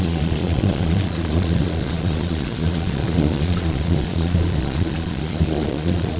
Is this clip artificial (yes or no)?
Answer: yes